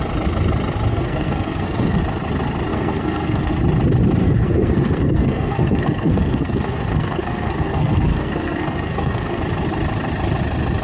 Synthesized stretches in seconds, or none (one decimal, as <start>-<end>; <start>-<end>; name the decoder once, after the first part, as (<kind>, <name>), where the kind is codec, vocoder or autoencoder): 0.9-2.0 (codec, SNAC); 2.7-3.5; 4.2-9.4